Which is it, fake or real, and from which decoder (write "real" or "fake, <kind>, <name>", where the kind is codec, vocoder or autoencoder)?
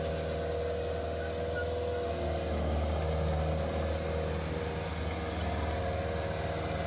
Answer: real